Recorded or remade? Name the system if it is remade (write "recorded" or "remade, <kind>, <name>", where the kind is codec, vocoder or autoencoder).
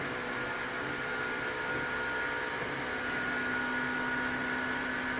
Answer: recorded